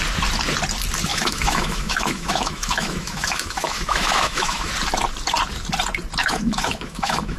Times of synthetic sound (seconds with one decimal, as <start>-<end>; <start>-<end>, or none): 1.1-4.7; 6.2-7.4